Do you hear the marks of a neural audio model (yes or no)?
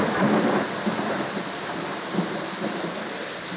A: yes